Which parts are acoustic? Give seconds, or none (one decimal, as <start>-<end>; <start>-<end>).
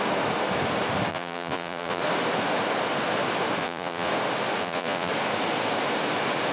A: 0.0-1.1; 2.0-3.6; 4.1-4.6; 5.1-6.5